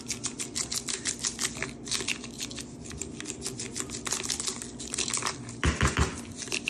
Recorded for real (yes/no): yes